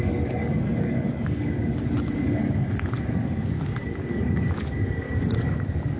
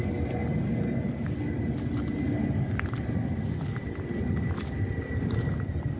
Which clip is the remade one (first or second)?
first